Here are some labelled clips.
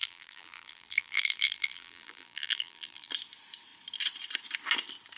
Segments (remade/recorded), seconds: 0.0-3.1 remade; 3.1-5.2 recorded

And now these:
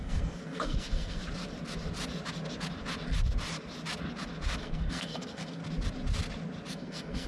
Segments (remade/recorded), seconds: 0.0-1.2 remade; 1.2-4.6 recorded; 4.6-5.6 remade; 5.6-6.7 recorded; 6.7-7.3 remade

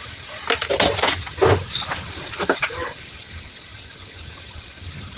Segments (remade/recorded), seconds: 0.0-5.2 recorded

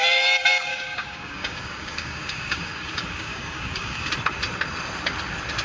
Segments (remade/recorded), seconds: 0.0-0.7 recorded; 0.7-4.1 remade; 4.1-5.6 recorded